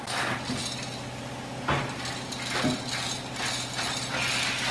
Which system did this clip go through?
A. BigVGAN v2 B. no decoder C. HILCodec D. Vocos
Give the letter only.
B